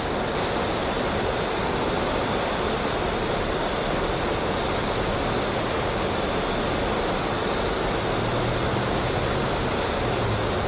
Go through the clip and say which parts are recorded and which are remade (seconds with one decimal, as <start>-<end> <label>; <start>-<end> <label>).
0.0-10.7 recorded